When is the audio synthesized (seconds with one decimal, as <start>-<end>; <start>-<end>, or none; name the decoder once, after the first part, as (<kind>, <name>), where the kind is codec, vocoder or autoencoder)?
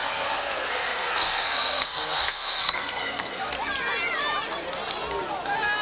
0.0-3.5 (codec, SNAC)